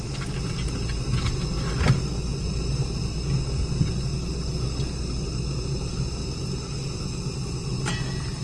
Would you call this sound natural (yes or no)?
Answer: yes